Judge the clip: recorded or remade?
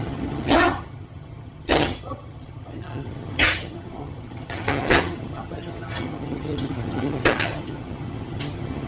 remade